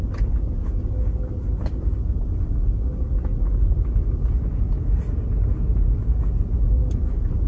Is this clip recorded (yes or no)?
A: yes